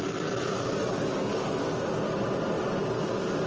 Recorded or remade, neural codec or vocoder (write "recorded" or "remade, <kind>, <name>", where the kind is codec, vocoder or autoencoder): recorded